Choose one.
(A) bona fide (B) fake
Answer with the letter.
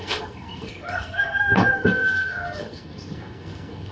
B